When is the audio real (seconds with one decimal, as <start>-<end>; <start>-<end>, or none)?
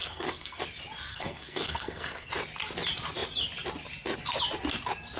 0.6-1.1; 2.3-5.2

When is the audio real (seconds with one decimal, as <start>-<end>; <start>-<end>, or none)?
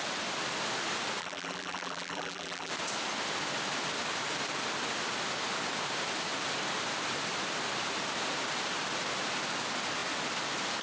0.0-1.2; 2.7-10.8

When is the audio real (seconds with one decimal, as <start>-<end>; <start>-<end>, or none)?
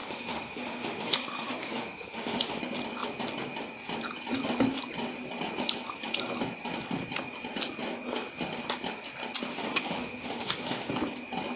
2.6-9.5; 10.9-11.6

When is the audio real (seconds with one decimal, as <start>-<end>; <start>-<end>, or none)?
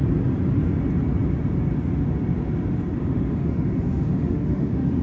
0.0-3.0